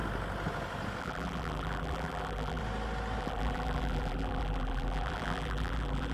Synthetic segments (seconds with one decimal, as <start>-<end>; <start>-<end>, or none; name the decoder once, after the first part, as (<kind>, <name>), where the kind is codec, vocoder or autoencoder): 1.0-2.6 (vocoder, BigVGAN v2); 3.2-6.1